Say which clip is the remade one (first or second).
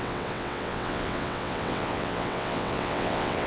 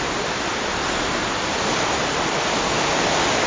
first